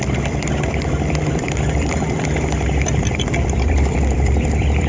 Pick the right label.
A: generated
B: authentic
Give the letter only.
A